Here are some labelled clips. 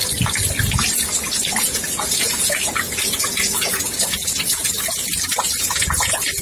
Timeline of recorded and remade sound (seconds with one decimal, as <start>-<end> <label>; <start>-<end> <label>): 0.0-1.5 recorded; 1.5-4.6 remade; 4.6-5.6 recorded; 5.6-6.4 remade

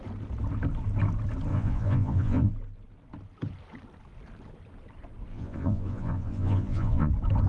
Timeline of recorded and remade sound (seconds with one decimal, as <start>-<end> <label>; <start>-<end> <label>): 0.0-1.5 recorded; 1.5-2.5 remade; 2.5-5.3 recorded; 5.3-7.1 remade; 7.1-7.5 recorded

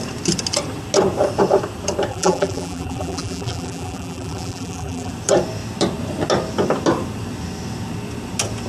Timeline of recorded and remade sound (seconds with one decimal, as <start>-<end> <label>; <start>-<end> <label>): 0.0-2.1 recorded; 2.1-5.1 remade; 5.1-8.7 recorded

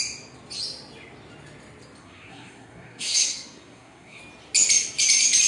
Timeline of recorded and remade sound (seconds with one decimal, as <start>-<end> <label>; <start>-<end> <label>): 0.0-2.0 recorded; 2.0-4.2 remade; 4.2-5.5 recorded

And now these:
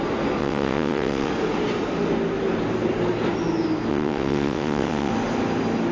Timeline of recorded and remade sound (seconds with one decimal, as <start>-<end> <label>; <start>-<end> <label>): 0.0-0.4 recorded; 0.4-1.3 remade; 1.3-3.9 recorded; 3.9-5.1 remade; 5.1-5.9 recorded

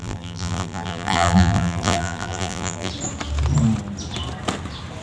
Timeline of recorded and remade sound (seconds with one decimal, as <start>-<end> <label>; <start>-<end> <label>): 0.0-2.9 remade; 2.9-5.0 recorded